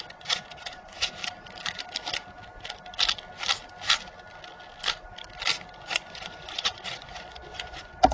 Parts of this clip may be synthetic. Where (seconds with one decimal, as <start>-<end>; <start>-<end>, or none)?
0.0-1.2; 5.8-8.1